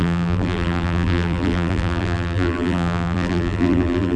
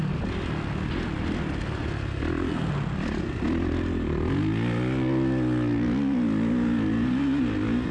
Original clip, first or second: second